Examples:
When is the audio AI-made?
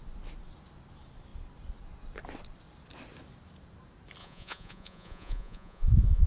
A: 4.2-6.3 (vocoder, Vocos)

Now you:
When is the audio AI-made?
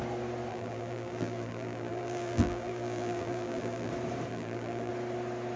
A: 0.5-3.9 (vocoder, BigVGAN v2); 4.3-4.9